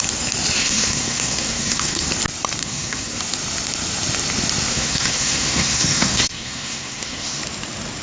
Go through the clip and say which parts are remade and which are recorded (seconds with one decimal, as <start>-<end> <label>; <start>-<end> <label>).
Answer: 0.0-0.6 recorded; 0.6-2.1 remade; 2.1-2.6 recorded; 2.6-3.2 remade; 3.2-4.7 recorded; 4.7-7.4 remade; 7.4-8.0 recorded